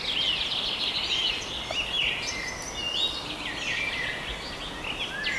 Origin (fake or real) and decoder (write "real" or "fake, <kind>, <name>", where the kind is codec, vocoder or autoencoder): real